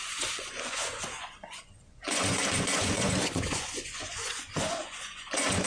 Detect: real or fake fake